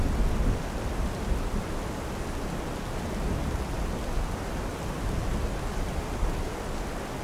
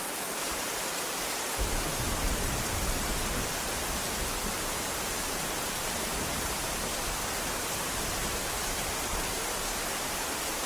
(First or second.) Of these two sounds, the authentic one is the first